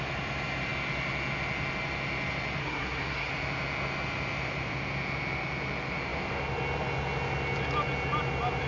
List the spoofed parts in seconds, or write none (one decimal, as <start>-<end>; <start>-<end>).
2.6-3.3